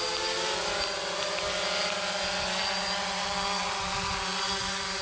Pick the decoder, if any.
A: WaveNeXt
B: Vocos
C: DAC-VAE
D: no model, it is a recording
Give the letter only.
D